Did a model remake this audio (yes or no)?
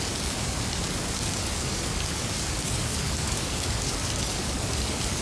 yes